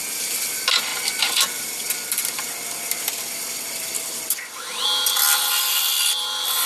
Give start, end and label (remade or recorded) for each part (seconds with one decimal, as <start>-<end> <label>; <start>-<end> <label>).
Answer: 0.0-0.9 remade; 0.9-2.8 recorded; 2.8-3.9 remade; 3.9-5.5 recorded; 5.5-6.7 remade